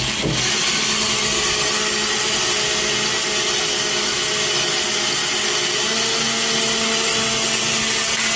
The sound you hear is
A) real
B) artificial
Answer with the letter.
A